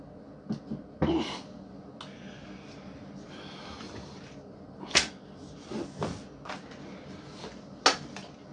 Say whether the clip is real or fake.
real